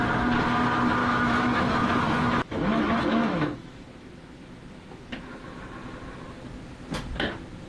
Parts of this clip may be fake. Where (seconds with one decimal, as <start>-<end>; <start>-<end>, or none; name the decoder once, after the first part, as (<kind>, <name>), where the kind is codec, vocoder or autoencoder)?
1.0-5.6 (autoencoder, DAC-VAE)